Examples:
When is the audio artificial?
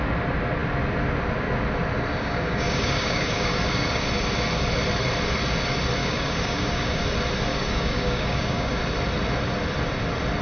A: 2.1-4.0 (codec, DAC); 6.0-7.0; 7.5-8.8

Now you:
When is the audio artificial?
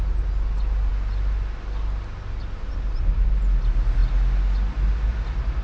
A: none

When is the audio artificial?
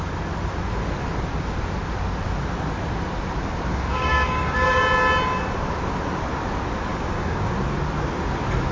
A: 3.7-4.8 (codec, DAC); 6.9-7.5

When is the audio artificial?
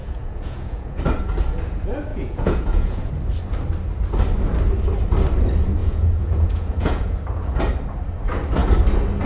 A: 0.0-1.0 (vocoder, Vocos); 2.1-3.1; 5.8-7.2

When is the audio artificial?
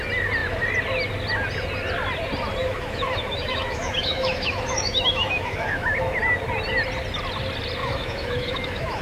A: 2.6-6.2 (autoencoder, DAC-VAE); 7.8-9.0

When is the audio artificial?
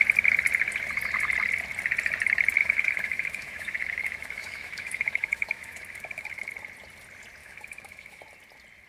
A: 2.6-6.4 (autoencoder, DAC-VAE); 7.4-8.2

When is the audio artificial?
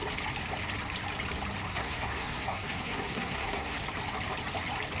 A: 1.7-3.8 (codec, SNAC)